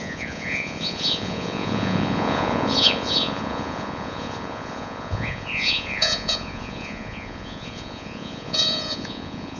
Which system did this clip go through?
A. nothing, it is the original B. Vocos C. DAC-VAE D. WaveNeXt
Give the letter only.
B